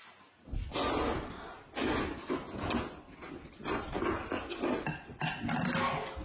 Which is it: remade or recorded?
recorded